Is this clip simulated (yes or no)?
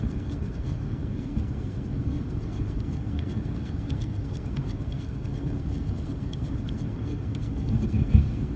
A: yes